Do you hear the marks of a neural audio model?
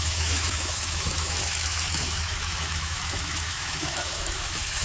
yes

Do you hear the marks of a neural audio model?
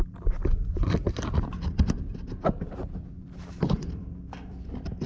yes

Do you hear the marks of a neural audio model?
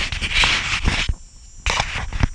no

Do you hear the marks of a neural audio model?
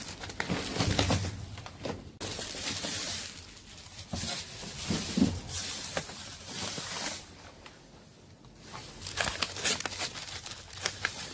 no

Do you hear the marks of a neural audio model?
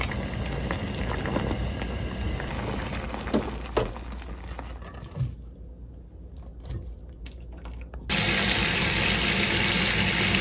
no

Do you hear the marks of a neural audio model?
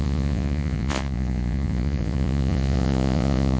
yes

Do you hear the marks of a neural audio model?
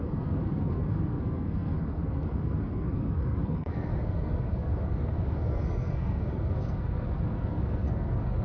yes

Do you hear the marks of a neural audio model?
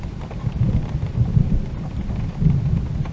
yes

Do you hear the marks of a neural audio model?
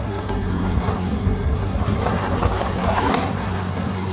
yes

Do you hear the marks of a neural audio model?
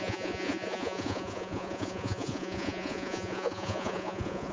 yes